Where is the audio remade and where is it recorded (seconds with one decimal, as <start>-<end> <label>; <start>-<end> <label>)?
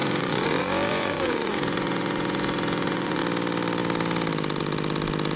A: 0.0-3.2 remade; 3.2-5.4 recorded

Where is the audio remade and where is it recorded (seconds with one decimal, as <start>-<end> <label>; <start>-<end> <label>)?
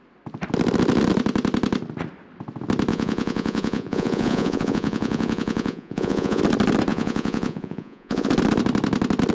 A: 0.0-2.9 recorded; 2.9-6.4 remade; 6.4-6.9 recorded; 6.9-8.3 remade; 8.3-9.3 recorded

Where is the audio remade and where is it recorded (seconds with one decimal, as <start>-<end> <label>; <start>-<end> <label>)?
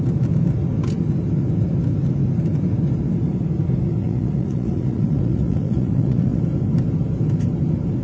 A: 0.0-4.0 recorded; 4.0-6.4 remade; 6.4-8.0 recorded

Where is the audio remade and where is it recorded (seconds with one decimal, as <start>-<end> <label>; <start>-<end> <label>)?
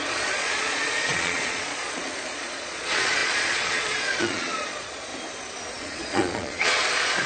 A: 0.0-5.1 remade; 5.1-5.7 recorded; 5.7-7.3 remade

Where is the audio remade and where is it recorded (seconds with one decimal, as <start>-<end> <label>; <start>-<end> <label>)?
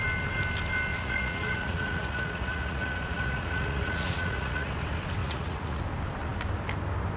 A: 0.0-0.9 recorded; 0.9-4.7 remade; 4.7-5.2 recorded; 5.2-5.8 remade; 5.8-7.2 recorded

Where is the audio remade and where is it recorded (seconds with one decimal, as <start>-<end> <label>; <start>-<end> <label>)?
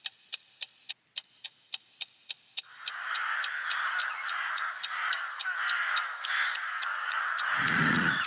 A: 0.0-4.0 recorded; 4.0-4.7 remade; 4.7-6.5 recorded; 6.5-8.3 remade